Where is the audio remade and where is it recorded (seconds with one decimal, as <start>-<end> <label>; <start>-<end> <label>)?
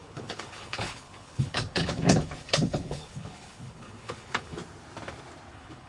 0.0-4.6 remade; 4.6-5.5 recorded; 5.5-5.9 remade